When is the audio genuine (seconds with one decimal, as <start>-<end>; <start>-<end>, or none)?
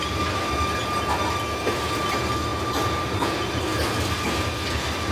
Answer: 0.0-5.1